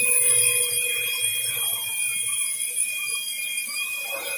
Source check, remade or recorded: recorded